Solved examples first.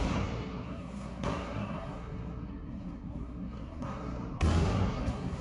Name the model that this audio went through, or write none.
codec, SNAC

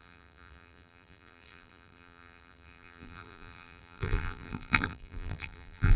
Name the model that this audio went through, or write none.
vocoder, BigVGAN v2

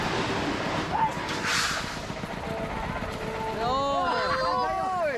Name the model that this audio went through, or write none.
none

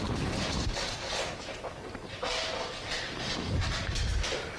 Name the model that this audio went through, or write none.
none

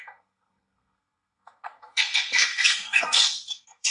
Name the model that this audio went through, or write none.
codec, SNAC